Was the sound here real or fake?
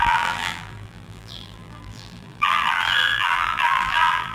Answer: fake